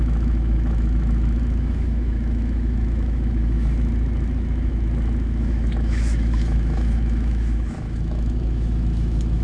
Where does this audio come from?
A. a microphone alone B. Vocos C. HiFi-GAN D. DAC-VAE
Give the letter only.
D